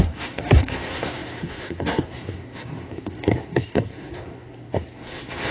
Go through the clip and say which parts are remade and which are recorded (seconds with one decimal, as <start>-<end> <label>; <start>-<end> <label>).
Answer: 0.0-5.5 remade